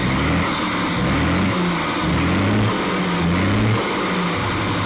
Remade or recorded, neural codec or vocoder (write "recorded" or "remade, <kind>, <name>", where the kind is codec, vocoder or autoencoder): recorded